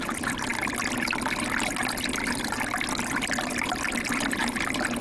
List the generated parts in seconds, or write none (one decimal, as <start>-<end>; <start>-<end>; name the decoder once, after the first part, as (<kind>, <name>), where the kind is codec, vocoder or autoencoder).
none